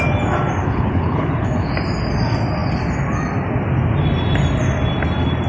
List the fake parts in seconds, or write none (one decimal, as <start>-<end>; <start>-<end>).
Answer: 0.6-1.7